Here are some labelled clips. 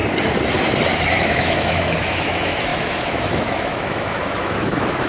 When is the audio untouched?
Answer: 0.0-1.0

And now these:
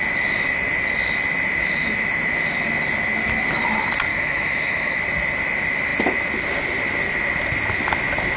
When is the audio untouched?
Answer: 0.0-4.1; 5.0-8.4

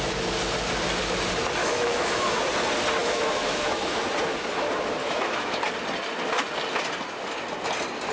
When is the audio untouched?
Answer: 0.0-1.6; 2.4-3.0; 4.0-5.0; 5.6-8.1

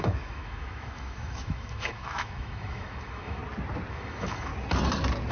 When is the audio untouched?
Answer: 3.4-3.9; 4.5-5.3

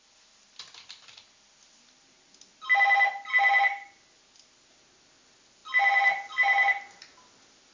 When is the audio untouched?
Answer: 0.0-7.7

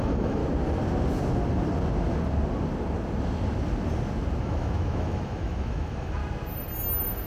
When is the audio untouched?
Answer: 0.4-4.4; 6.2-7.3